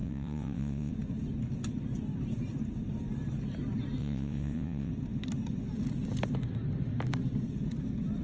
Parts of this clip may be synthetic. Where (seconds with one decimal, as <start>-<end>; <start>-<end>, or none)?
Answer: 0.0-0.9; 4.0-4.9